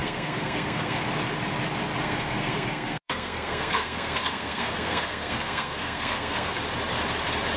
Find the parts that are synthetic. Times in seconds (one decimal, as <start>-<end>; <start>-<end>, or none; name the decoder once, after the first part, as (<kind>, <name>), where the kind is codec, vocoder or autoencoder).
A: 0.0-1.0 (codec, SNAC); 2.0-6.6